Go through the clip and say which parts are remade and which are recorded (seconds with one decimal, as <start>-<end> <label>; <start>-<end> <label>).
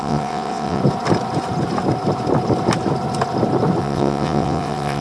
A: 0.0-0.8 remade; 0.8-3.8 recorded; 3.8-5.0 remade